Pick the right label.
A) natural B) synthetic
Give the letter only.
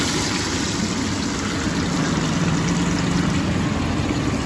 A